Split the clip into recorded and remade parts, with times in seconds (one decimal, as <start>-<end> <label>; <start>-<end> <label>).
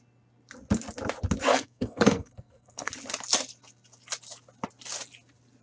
0.0-1.5 recorded; 1.5-2.9 remade; 2.9-5.6 recorded